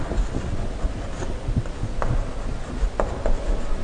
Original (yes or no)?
yes